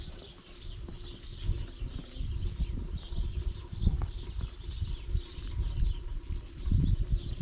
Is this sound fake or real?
real